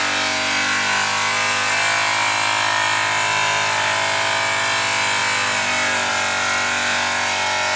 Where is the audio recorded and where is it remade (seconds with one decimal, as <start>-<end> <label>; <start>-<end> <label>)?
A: 0.0-7.8 recorded